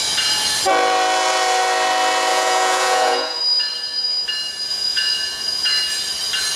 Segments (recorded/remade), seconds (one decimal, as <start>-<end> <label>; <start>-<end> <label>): 0.0-2.3 recorded; 2.3-3.4 remade; 3.4-4.7 recorded; 4.7-5.8 remade; 5.8-6.6 recorded